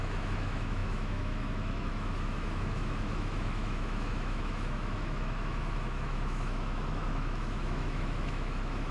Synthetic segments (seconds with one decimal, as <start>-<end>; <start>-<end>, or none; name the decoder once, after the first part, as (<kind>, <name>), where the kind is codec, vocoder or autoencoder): 0.0-8.9 (autoencoder, DAC-VAE)